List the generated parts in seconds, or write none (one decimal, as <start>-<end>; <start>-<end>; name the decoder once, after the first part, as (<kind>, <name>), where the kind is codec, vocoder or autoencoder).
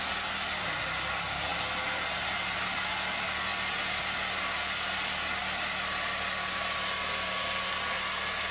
none